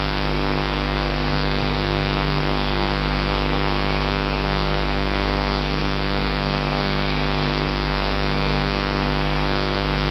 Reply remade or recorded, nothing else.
remade